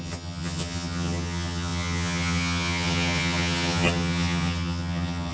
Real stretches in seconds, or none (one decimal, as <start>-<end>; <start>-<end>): none